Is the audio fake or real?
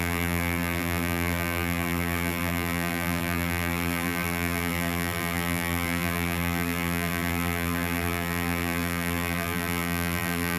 fake